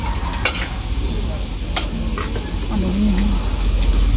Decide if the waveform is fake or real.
real